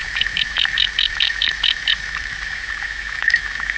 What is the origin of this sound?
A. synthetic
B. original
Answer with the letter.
A